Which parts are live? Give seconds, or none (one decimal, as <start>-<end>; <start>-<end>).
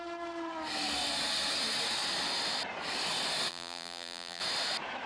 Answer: 0.0-3.5; 4.4-5.1